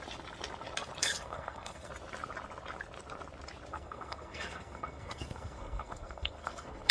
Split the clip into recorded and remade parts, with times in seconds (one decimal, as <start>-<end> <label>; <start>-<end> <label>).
0.0-1.0 recorded; 1.0-1.9 remade; 1.9-3.7 recorded; 3.7-6.9 remade